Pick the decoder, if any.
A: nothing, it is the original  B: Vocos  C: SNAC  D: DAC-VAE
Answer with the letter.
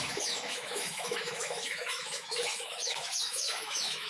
D